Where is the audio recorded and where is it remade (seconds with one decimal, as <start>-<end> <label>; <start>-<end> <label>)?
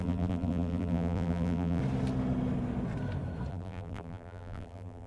0.0-1.8 remade; 1.8-3.5 recorded; 3.5-5.1 remade